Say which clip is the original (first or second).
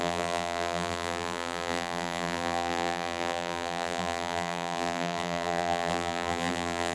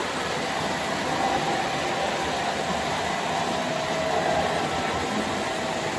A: second